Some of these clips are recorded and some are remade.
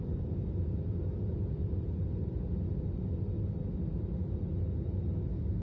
recorded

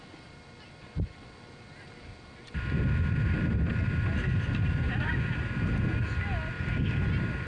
recorded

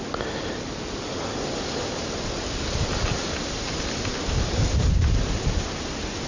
recorded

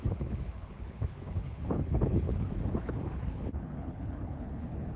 remade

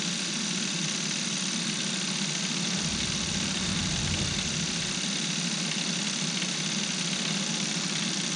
recorded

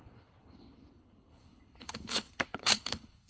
remade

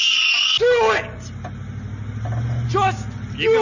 recorded